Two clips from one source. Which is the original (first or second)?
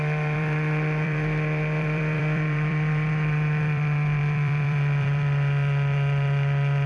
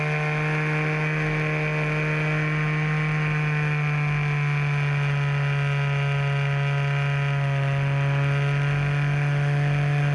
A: second